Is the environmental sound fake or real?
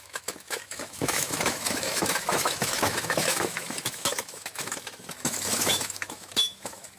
fake